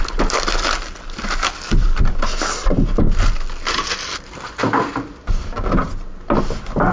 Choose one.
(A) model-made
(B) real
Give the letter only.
B